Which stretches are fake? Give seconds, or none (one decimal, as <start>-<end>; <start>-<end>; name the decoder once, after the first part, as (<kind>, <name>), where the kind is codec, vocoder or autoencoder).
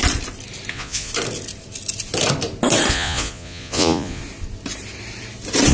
0.7-1.1 (vocoder, Vocos); 2.9-4.2